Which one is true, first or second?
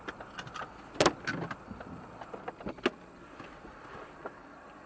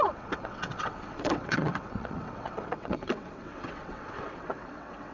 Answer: first